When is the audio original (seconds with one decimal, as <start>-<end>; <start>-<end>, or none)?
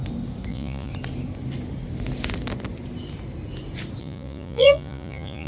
0.0-0.5; 0.9-4.0